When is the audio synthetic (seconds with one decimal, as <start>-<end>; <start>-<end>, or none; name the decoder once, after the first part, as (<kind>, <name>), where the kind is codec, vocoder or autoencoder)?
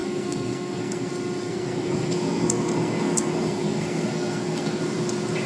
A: 0.0-1.1 (codec, SNAC); 1.5-4.8